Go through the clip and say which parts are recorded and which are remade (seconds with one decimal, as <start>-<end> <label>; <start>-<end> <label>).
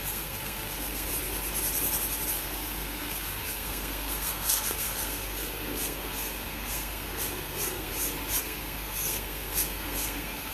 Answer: 0.0-1.1 remade; 1.1-2.3 recorded; 2.3-7.9 remade; 7.9-8.4 recorded; 8.4-10.5 remade